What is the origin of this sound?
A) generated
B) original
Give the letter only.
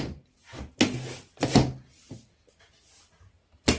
B